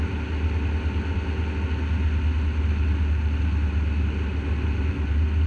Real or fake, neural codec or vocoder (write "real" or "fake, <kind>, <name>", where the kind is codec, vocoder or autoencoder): real